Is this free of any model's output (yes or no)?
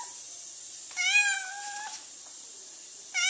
yes